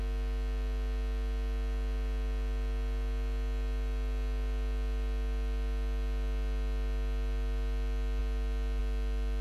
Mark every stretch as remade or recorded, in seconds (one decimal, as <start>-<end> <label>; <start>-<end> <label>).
0.0-9.4 recorded